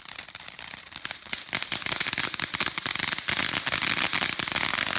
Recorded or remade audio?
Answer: recorded